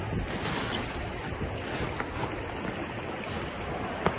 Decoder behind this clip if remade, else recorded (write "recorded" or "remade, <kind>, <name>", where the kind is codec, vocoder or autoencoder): recorded